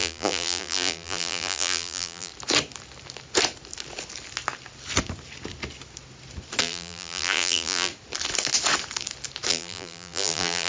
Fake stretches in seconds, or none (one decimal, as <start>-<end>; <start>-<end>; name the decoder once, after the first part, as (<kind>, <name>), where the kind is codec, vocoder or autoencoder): 0.0-2.3 (vocoder, BigVGAN v2); 6.6-7.9; 9.5-10.7

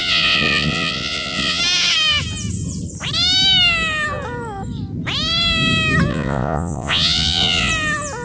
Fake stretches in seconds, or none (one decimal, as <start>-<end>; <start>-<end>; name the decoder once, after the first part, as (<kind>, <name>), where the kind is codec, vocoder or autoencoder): 0.0-1.6 (vocoder, Vocos); 6.1-7.7

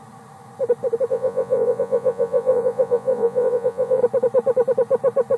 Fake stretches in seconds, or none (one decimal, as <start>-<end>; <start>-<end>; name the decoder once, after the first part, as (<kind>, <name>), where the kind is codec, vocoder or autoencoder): 1.1-4.0 (vocoder, Vocos)

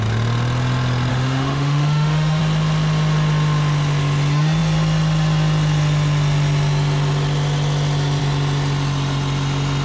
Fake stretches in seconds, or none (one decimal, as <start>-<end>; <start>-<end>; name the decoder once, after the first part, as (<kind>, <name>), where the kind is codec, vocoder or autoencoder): 1.1-2.4 (autoencoder, DAC-VAE)